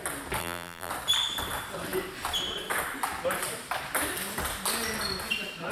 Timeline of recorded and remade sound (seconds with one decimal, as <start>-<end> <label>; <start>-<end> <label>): 0.0-0.4 recorded; 0.4-0.9 remade; 0.9-5.7 recorded